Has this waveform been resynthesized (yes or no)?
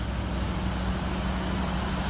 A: no